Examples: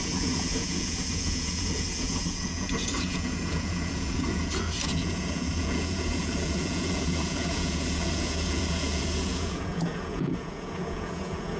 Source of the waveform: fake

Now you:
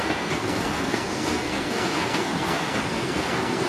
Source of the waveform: fake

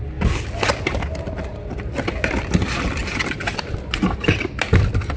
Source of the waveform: real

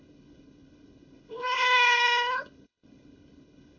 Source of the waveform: fake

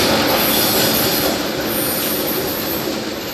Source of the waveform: real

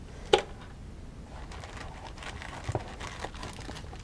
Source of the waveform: real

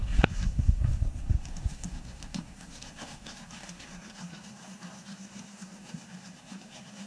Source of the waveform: fake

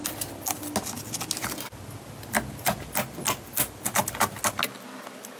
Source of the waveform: real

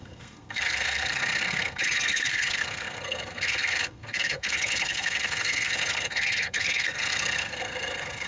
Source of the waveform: fake